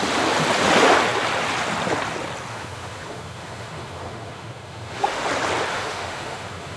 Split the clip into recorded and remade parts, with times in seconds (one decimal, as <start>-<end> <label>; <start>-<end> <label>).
0.0-2.5 recorded; 2.5-5.3 remade; 5.3-5.7 recorded; 5.7-6.8 remade